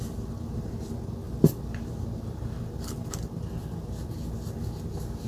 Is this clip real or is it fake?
real